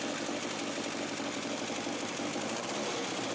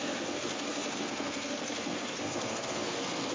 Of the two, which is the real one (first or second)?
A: first